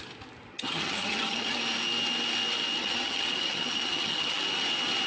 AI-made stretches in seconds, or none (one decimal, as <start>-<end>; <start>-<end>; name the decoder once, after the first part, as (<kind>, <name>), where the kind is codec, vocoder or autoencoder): 0.5-1.6 (vocoder, HiFi-GAN); 2.8-4.4